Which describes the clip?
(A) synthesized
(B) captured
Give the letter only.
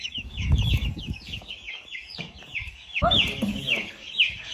A